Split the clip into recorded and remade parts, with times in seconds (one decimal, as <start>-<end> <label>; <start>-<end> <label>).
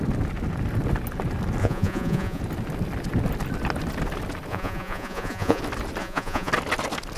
0.0-1.6 recorded; 1.6-2.4 remade; 2.4-4.5 recorded; 4.5-5.6 remade; 5.6-6.0 recorded; 6.0-6.5 remade; 6.5-7.2 recorded